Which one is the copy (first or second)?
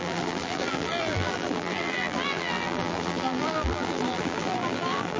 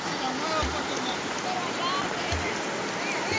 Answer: first